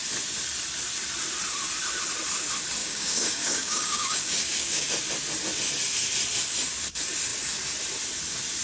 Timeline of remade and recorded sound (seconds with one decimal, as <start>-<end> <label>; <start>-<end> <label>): 0.0-2.8 recorded; 2.8-4.9 remade; 4.9-8.6 recorded